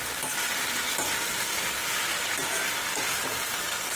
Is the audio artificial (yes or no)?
no